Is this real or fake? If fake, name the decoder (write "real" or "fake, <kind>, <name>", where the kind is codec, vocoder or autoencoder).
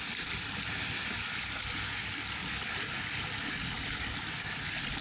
real